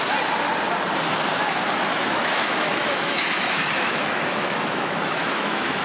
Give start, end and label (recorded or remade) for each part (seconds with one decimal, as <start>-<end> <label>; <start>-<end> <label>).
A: 0.0-1.9 recorded; 1.9-5.8 remade